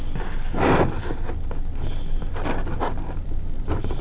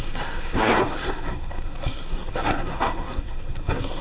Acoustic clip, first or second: first